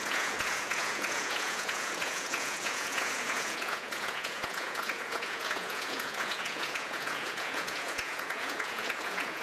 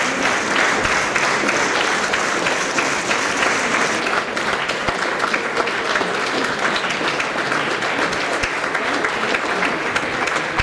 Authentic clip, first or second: second